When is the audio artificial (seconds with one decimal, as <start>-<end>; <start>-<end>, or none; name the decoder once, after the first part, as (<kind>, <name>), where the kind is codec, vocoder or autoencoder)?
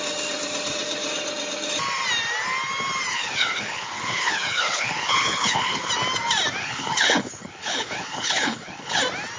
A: 3.1-5.9 (codec, HILCodec); 6.6-9.0